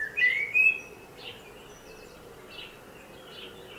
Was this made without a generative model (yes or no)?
yes